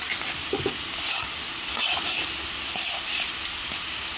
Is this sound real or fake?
real